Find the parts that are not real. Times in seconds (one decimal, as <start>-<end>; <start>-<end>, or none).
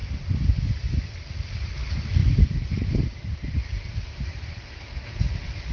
2.2-5.7